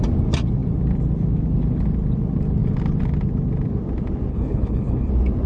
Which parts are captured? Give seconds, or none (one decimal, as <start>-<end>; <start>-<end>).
0.0-4.3; 5.1-5.5

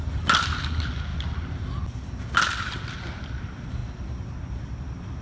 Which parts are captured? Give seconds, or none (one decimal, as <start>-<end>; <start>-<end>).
0.0-5.2

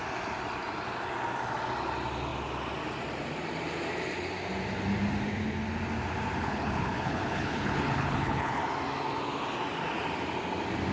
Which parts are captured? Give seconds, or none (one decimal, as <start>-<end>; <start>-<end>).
0.0-6.4; 8.6-10.9

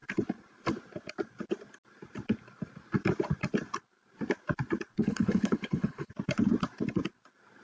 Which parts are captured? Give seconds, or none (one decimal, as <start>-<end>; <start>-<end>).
0.0-5.0; 6.1-7.6